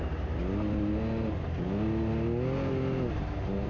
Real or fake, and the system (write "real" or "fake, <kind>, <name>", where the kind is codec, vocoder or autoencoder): real